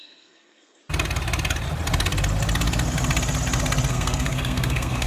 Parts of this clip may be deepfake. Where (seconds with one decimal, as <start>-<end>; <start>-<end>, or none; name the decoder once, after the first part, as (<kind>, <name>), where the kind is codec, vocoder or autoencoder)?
0.0-0.8 (codec, SNAC); 3.9-5.1